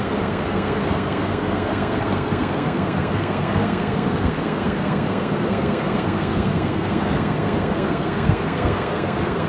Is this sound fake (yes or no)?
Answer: yes